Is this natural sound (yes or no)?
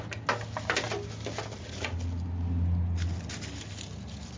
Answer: yes